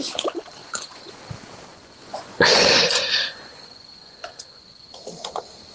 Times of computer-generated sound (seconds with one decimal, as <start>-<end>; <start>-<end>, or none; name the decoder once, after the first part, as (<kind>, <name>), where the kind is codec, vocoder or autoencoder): 0.6-1.2 (vocoder, Vocos); 1.7-4.9